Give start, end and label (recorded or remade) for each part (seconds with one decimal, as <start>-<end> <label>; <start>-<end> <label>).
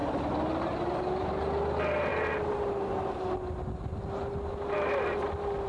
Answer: 0.0-5.7 recorded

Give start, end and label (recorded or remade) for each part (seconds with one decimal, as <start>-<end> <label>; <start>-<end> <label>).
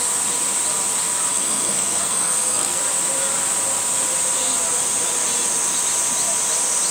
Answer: 0.0-1.3 recorded; 1.3-2.8 remade; 2.8-6.9 recorded